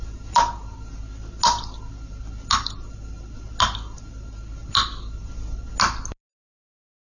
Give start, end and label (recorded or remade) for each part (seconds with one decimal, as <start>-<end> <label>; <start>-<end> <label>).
0.0-7.1 recorded